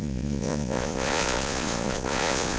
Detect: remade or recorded remade